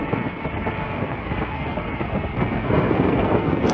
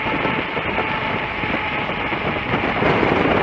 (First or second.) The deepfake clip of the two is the first